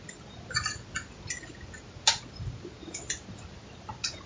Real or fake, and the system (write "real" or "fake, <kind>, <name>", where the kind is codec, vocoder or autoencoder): real